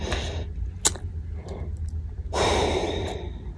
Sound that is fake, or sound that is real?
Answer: real